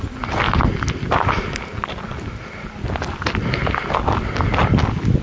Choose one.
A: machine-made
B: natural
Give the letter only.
B